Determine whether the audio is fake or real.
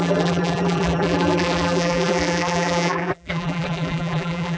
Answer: fake